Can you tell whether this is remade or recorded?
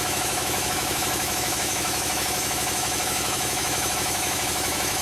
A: remade